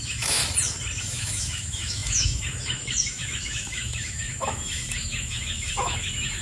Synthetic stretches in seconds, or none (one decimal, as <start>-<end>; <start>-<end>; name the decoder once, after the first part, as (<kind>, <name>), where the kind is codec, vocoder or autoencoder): 0.0-0.4 (autoencoder, DAC-VAE); 1.0-6.4